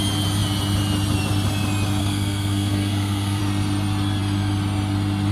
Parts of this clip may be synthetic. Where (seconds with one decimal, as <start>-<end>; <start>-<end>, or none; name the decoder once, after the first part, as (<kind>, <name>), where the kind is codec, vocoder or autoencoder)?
2.0-3.4 (codec, SNAC)